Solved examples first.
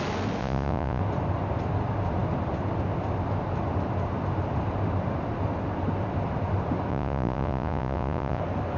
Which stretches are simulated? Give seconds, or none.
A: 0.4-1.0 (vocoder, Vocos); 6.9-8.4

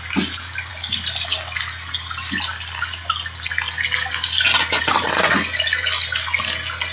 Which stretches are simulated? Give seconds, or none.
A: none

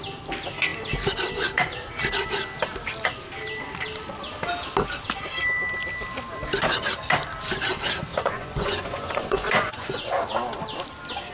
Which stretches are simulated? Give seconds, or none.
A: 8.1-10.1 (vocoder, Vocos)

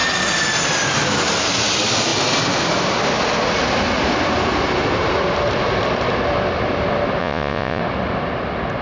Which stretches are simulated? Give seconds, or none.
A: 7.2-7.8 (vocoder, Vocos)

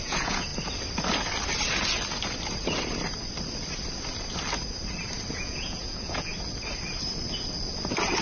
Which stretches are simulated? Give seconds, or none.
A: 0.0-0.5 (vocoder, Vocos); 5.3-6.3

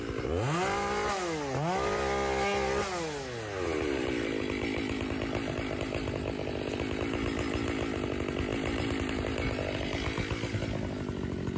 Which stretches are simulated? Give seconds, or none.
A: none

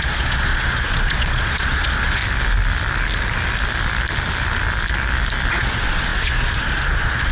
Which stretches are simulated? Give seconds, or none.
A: 0.0-2.2 (vocoder, Vocos); 5.5-7.3